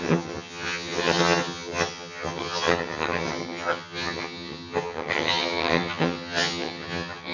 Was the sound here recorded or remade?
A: remade